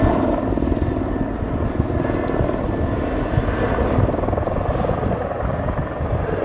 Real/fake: real